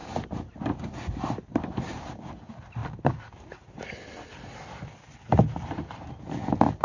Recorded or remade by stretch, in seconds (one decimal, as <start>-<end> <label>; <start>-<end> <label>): 0.0-6.8 recorded